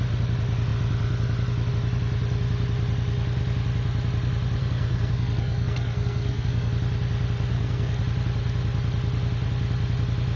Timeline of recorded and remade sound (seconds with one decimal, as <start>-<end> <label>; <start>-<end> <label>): 0.0-4.6 recorded; 4.6-6.7 remade; 6.7-7.5 recorded; 7.5-8.0 remade; 8.0-10.4 recorded